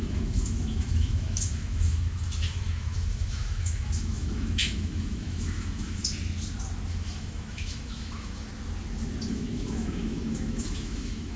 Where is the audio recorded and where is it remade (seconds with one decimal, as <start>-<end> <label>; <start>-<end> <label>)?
0.0-6.0 remade; 6.0-6.9 recorded; 6.9-8.5 remade; 8.5-9.3 recorded; 9.3-11.4 remade